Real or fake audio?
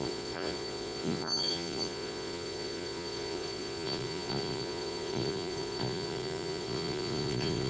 fake